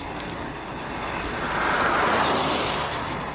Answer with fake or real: real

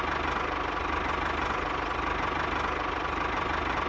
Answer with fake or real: real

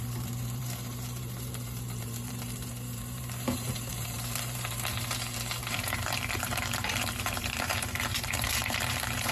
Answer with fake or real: fake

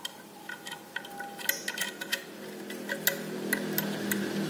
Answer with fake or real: real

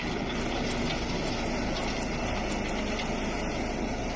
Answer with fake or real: real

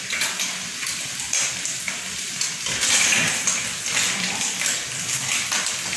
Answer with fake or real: real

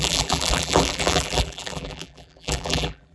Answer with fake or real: fake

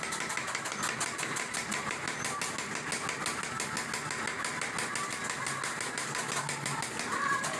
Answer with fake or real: real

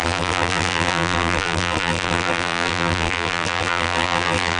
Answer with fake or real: fake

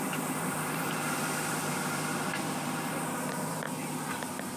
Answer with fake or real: fake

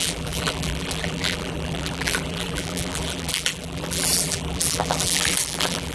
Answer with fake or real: fake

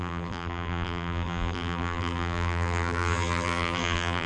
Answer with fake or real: fake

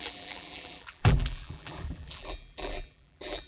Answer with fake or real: fake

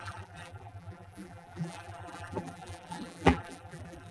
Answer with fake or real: fake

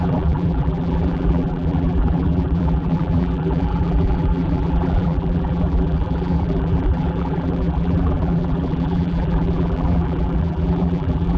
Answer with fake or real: fake